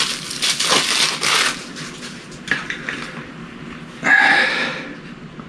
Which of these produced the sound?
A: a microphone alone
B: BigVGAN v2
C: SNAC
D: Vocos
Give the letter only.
A